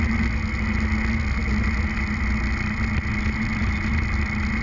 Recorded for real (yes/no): yes